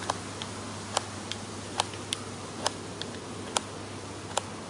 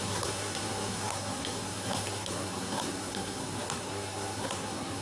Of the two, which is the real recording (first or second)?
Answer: first